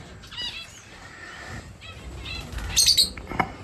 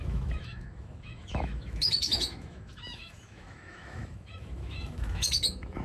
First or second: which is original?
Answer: first